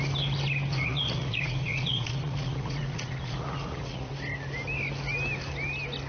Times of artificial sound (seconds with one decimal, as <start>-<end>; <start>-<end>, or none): 0.7-4.1